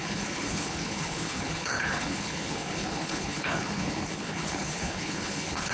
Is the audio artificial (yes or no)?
yes